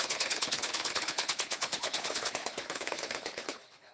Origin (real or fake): fake